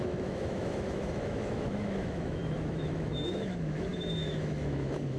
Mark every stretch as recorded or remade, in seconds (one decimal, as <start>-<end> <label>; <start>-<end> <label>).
0.0-5.2 remade